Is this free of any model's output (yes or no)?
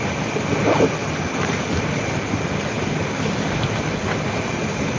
yes